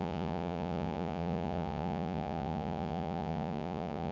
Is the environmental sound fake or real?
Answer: fake